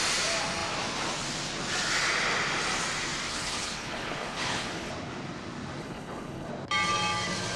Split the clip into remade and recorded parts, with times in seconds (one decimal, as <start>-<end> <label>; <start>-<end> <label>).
0.0-3.3 recorded; 3.3-4.9 remade; 4.9-5.8 recorded; 5.8-6.5 remade; 6.5-7.6 recorded